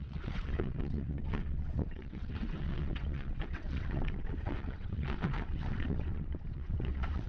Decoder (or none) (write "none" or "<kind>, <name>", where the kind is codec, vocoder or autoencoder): vocoder, WaveNeXt